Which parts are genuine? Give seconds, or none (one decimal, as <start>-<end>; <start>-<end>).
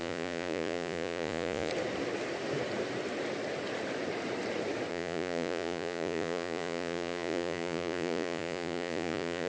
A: 1.7-4.9